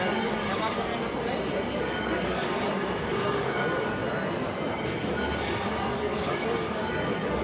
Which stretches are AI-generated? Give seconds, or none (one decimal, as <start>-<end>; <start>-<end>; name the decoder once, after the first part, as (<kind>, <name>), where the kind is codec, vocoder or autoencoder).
0.0-0.9 (codec, DAC); 1.7-4.0; 5.0-7.4